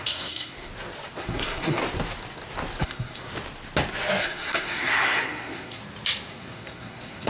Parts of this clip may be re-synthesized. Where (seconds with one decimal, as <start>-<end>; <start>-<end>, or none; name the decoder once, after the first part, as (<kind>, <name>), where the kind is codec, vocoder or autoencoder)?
0.0-0.7 (codec, SNAC); 1.2-1.8; 2.8-3.3; 4.2-5.8; 6.3-7.3